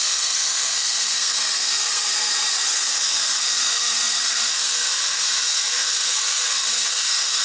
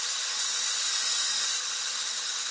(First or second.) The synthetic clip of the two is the first